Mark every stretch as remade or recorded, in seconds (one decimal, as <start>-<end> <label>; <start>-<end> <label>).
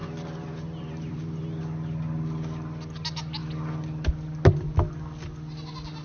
0.0-1.6 remade; 1.6-6.0 recorded